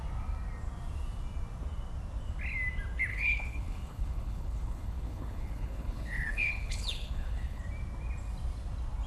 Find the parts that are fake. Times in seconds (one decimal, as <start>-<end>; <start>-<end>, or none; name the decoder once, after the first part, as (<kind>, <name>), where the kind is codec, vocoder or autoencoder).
3.1-7.6 (codec, HILCodec)